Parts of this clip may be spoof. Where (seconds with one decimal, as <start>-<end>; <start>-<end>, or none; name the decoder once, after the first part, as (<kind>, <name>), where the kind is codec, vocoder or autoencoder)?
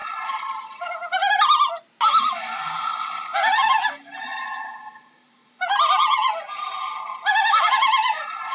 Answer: 0.0-1.3 (vocoder, BigVGAN v2)